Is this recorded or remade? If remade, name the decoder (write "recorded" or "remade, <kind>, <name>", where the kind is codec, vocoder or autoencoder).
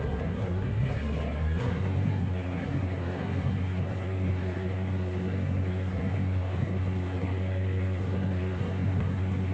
remade, codec, SNAC